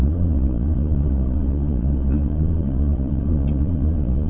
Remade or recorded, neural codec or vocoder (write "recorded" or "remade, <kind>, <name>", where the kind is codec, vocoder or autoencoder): remade, vocoder, Vocos